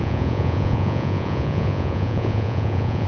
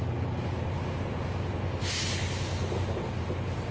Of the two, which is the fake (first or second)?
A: first